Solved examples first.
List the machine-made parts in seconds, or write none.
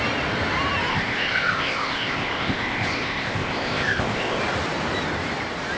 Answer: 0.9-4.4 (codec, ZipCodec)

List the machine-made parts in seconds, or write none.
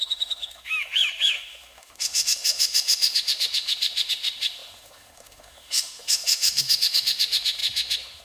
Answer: 0.0-8.2 (autoencoder, DAC-VAE)